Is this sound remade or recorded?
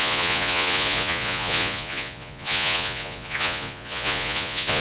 remade